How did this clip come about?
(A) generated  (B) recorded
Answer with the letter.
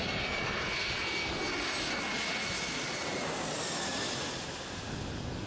B